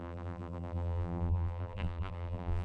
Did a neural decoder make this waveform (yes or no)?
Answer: yes